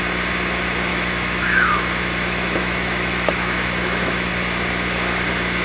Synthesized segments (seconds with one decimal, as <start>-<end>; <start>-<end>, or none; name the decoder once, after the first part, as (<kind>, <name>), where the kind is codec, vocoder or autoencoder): 0.9-4.3 (autoencoder, DAC-VAE)